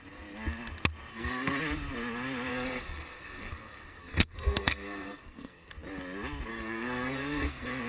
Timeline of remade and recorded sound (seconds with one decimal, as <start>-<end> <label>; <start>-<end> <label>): 0.0-1.1 recorded; 1.1-1.6 remade; 1.6-2.5 recorded; 2.5-5.7 remade; 5.7-6.5 recorded; 6.5-7.9 remade